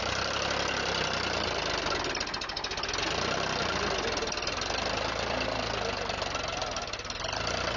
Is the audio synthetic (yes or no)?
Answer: no